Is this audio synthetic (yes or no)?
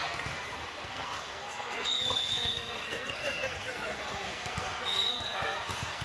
yes